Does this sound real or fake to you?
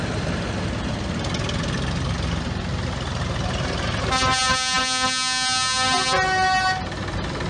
real